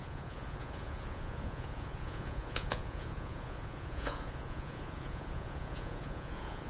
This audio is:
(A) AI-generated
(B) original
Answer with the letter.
A